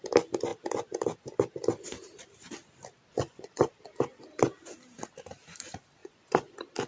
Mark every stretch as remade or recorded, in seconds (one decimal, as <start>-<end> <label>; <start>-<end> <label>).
0.0-3.1 recorded; 3.1-3.7 remade; 3.7-6.0 recorded; 6.0-6.5 remade; 6.5-6.9 recorded